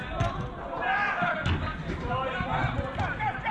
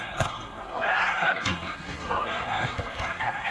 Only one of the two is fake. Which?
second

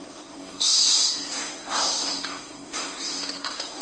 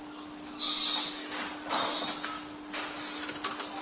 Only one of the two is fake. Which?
first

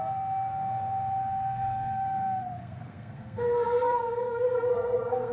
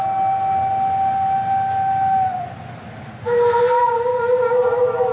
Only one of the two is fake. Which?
first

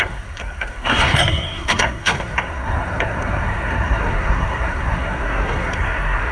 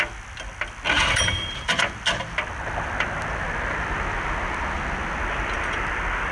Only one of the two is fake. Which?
first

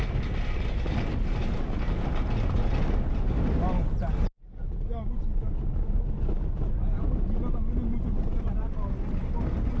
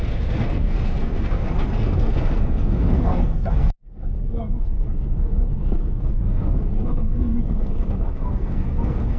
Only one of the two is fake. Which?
second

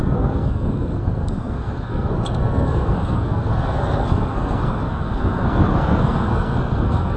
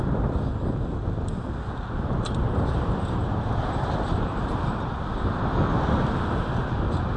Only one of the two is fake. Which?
first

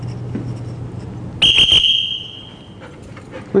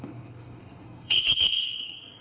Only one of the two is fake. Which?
second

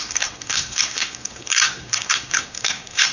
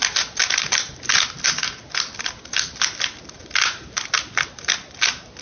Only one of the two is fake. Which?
first